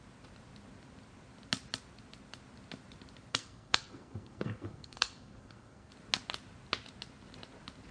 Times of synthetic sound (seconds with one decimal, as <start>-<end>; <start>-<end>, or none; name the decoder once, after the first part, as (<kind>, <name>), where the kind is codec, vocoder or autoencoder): 3.3-5.9 (codec, SNAC)